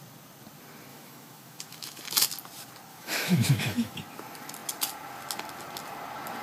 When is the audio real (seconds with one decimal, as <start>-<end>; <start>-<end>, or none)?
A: 0.0-0.9; 2.0-2.9; 4.0-6.4